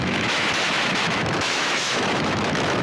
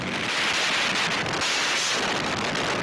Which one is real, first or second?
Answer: second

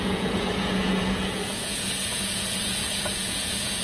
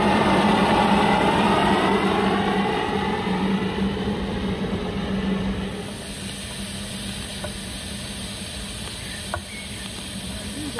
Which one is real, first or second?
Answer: second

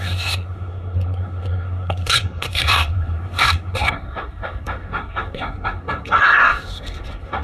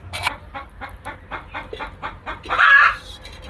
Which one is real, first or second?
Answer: second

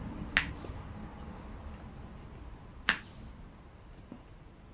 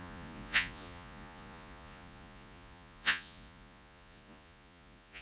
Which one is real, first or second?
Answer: first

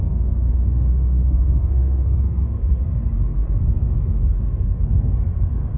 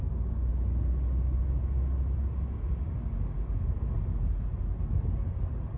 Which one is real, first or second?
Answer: second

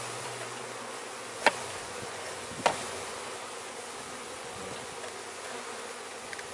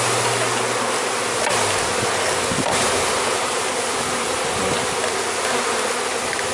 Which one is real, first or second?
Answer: second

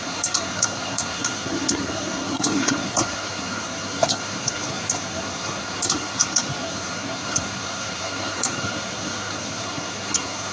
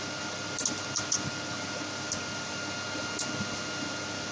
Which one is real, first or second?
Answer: second